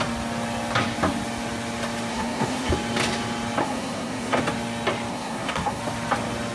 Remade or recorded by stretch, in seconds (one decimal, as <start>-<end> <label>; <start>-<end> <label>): 0.0-2.1 recorded; 2.1-2.7 remade; 2.7-3.6 recorded; 3.6-4.4 remade; 4.4-5.1 recorded; 5.1-5.8 remade; 5.8-6.5 recorded